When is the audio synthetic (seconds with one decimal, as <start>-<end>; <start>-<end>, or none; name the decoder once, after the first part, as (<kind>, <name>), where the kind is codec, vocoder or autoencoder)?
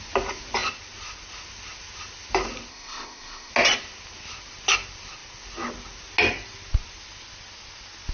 2.7-3.5 (codec, ZipCodec)